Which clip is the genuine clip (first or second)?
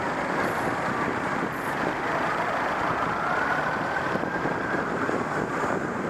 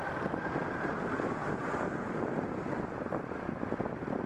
second